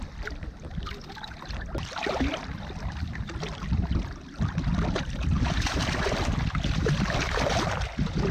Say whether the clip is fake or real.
real